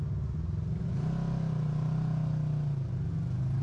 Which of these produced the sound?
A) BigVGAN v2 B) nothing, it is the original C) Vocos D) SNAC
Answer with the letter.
B